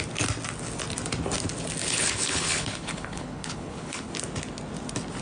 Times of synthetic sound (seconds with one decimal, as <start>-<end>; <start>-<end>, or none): 1.8-4.1